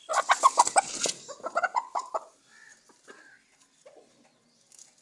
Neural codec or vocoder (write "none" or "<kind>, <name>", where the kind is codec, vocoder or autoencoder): none